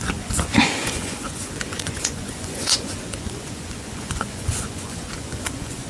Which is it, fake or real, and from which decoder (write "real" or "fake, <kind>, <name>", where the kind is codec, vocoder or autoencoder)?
fake, vocoder, Vocos